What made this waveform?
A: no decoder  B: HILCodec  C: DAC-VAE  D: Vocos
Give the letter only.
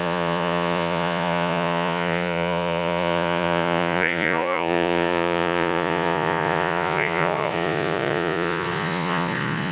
D